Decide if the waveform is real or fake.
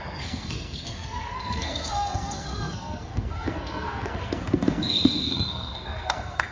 fake